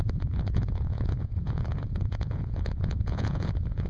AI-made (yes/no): yes